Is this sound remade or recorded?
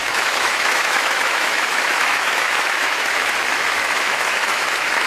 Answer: remade